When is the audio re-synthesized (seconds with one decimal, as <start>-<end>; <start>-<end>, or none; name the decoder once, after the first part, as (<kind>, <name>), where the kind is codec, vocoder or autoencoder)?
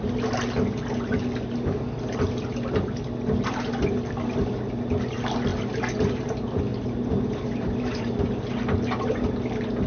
6.7-8.3 (vocoder, BigVGAN v2)